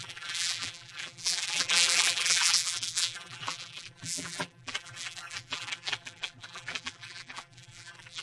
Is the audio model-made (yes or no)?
yes